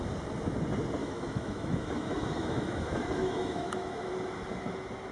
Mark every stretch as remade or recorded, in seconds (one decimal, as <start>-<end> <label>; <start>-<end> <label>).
0.0-1.0 recorded; 1.0-4.1 remade; 4.1-5.1 recorded